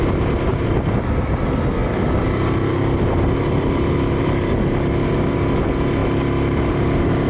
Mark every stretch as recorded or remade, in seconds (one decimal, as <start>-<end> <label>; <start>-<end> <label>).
0.0-0.5 recorded; 0.5-1.1 remade; 1.1-1.8 recorded; 1.8-4.5 remade; 4.5-7.3 recorded